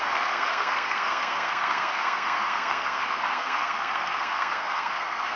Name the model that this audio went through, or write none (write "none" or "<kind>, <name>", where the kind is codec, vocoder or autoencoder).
codec, SNAC